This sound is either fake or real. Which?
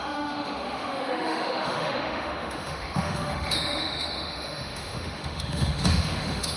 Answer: fake